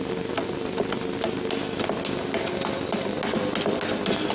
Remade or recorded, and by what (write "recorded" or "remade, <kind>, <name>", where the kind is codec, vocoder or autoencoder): recorded